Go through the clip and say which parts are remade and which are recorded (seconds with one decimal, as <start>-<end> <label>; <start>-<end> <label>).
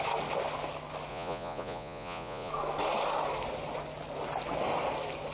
0.0-1.1 recorded; 1.1-2.5 remade; 2.5-5.3 recorded